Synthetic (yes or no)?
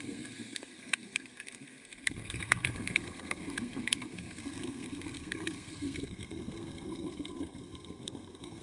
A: yes